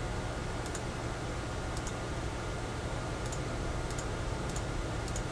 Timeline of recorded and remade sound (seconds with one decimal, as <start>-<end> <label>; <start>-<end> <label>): 0.0-0.4 recorded; 0.4-1.2 remade; 1.2-1.9 recorded; 1.9-5.3 remade